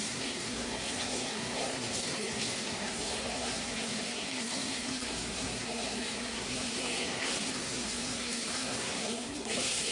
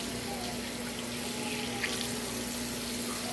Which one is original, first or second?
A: second